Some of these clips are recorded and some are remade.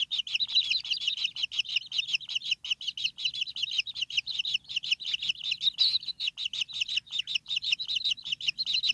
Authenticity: recorded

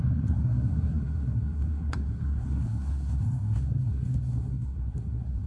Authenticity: remade